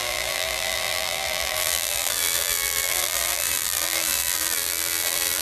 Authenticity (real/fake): fake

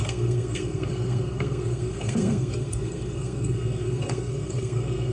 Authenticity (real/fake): fake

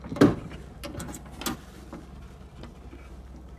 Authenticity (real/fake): real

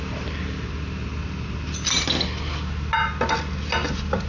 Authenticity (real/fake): real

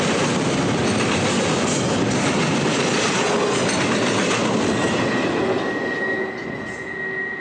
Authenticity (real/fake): real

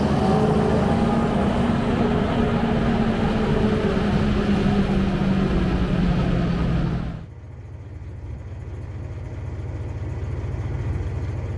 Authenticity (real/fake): real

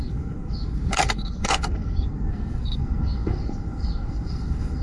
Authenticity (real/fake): fake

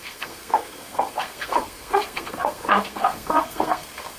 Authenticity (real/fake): fake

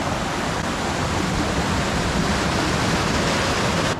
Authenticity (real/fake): real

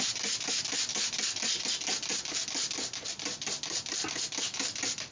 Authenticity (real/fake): real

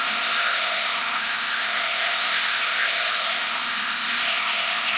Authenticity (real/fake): fake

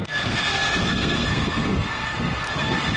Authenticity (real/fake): fake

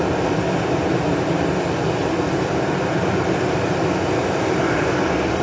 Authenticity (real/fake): real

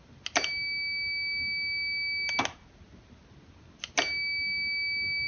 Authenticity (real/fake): real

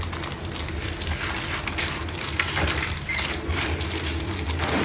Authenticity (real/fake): real